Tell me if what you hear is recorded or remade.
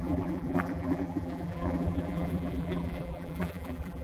remade